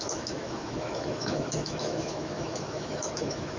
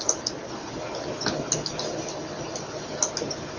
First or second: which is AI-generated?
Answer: first